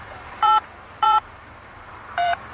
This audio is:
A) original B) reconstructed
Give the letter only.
B